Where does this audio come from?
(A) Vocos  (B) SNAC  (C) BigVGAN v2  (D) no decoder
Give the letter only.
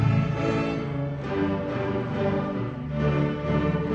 C